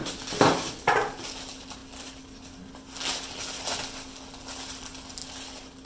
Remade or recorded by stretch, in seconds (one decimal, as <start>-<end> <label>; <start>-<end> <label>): 0.0-5.9 recorded